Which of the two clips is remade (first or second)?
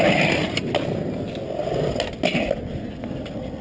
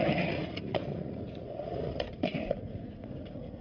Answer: second